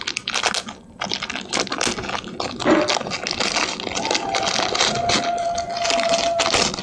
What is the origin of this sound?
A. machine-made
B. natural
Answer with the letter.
B